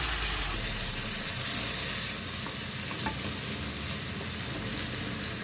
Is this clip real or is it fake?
real